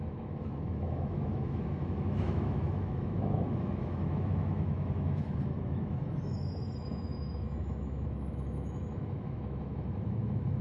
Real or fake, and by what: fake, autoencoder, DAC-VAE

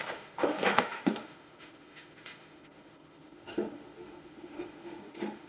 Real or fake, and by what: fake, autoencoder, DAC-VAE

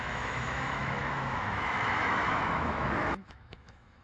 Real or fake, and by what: fake, autoencoder, DAC-VAE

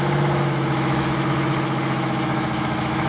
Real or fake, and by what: fake, autoencoder, DAC-VAE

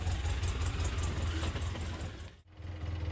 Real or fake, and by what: real